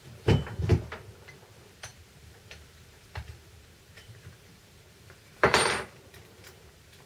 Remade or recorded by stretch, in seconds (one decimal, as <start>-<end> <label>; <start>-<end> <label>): 0.0-7.1 remade